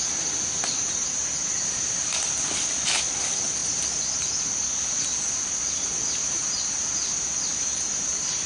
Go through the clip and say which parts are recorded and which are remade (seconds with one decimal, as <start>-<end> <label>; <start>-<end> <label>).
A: 0.0-6.2 recorded; 6.2-6.8 remade; 6.8-7.5 recorded; 7.5-8.5 remade